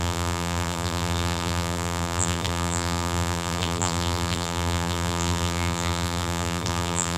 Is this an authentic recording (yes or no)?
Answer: no